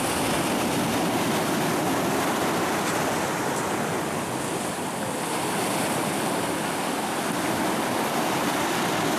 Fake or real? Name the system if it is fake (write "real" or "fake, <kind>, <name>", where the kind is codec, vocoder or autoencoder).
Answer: real